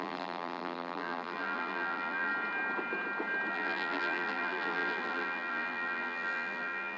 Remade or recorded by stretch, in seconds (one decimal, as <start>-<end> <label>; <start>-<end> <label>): 0.0-2.3 remade; 2.3-3.5 recorded; 3.5-7.0 remade